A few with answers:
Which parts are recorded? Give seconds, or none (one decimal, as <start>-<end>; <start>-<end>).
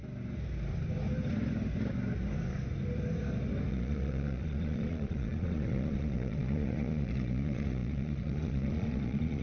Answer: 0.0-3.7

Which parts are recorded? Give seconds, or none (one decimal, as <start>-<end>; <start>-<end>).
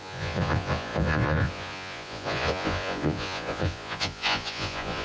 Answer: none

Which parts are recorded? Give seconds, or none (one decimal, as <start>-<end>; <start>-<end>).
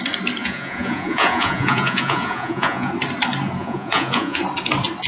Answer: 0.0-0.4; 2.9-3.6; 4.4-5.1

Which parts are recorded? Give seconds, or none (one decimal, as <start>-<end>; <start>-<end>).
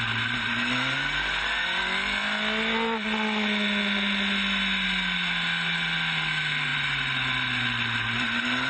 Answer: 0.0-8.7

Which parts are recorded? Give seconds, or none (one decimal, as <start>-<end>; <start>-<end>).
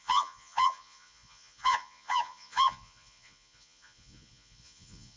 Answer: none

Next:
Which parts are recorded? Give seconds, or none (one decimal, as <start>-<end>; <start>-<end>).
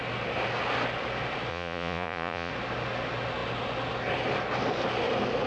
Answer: 0.0-1.5; 2.5-5.5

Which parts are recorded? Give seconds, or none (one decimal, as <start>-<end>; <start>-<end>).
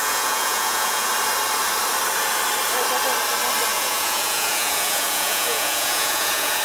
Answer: 1.1-3.7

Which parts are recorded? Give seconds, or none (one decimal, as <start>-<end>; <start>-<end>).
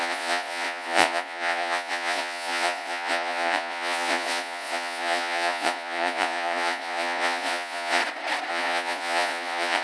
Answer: 8.0-8.5